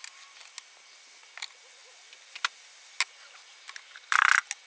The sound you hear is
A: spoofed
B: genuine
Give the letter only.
B